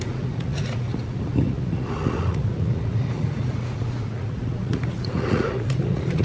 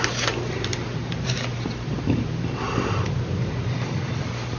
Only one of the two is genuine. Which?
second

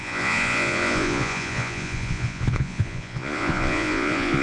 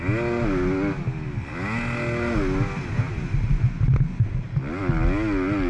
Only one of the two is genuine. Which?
second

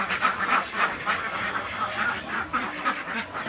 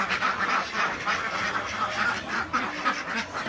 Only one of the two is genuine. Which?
second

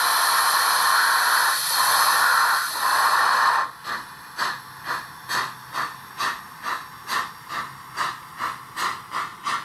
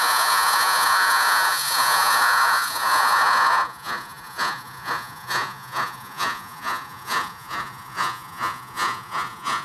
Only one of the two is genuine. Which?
first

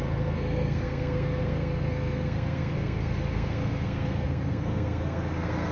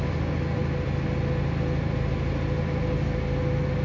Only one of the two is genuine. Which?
second